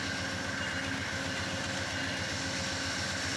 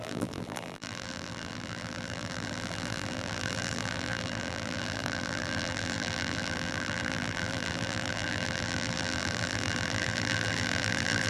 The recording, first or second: first